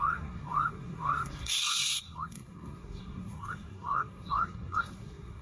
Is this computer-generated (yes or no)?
yes